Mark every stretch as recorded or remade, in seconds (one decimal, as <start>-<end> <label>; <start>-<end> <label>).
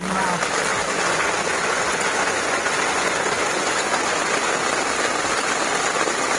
0.0-0.7 recorded; 0.7-4.5 remade; 4.5-6.4 recorded